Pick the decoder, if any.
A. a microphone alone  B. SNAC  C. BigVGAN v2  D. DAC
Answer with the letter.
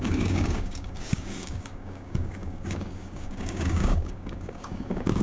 D